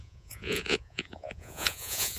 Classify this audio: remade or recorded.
remade